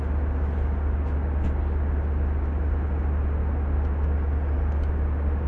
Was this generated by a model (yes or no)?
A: no